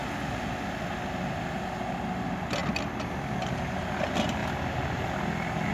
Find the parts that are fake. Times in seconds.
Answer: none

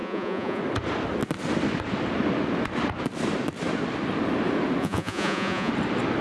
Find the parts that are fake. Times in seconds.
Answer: 0.0-0.6 (vocoder, Vocos); 4.8-5.7

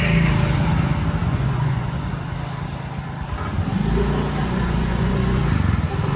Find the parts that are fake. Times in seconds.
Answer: 1.2-2.1 (vocoder, Vocos); 4.4-5.4

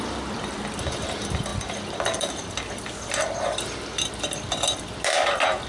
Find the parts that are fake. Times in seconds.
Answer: none

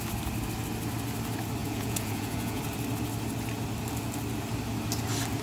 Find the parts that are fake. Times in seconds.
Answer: 1.6-2.6 (vocoder, Vocos)

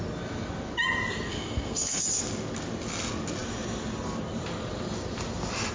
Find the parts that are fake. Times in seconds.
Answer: 1.3-2.0 (codec, SNAC)

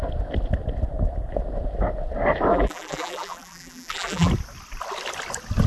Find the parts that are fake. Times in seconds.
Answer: 2.5-4.3 (vocoder, BigVGAN v2)